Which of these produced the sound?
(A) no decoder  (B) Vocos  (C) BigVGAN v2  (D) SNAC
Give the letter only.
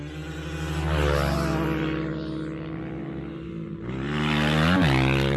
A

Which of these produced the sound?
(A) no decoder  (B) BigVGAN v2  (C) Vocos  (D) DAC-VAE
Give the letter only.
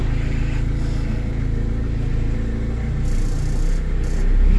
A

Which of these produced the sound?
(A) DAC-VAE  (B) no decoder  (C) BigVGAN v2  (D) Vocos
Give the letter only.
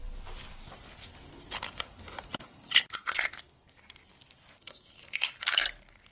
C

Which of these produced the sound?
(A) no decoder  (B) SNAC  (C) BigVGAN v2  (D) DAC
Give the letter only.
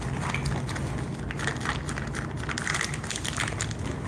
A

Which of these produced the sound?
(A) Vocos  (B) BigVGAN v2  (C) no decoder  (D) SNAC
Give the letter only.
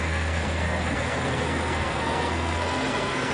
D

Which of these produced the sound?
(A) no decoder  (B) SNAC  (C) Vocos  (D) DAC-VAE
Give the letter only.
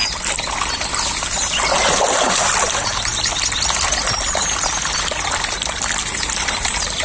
A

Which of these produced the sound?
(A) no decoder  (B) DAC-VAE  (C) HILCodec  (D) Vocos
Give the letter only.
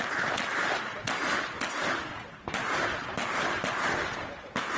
A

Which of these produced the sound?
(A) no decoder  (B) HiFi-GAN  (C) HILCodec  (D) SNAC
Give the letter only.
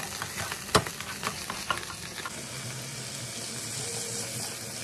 A